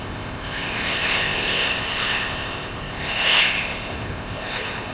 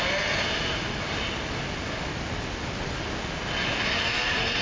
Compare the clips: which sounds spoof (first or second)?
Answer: first